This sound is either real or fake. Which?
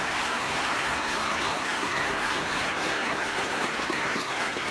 fake